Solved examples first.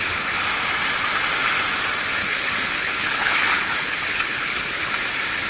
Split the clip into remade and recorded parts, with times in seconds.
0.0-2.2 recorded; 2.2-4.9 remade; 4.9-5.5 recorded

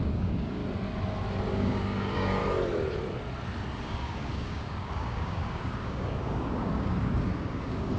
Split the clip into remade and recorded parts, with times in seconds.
0.0-0.6 remade; 0.6-1.5 recorded; 1.5-2.4 remade; 2.4-3.8 recorded; 3.8-8.0 remade

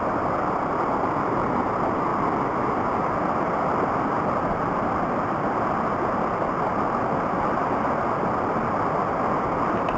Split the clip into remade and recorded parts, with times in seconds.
0.0-1.0 recorded; 1.0-1.7 remade; 1.7-10.0 recorded

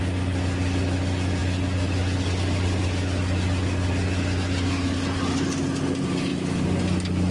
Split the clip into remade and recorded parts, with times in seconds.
0.0-7.3 recorded

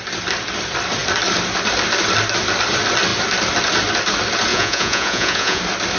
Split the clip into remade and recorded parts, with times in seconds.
0.0-4.5 recorded; 4.5-5.6 remade; 5.6-6.0 recorded

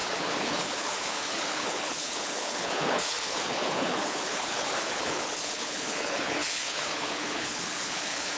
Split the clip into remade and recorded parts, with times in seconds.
0.0-8.4 remade